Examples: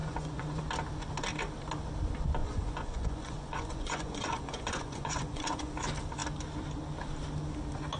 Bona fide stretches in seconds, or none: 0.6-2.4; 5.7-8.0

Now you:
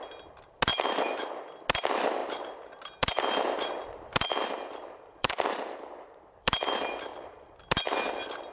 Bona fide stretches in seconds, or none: 0.0-0.7; 1.3-2.2; 2.7-5.1; 6.6-7.1; 7.6-8.5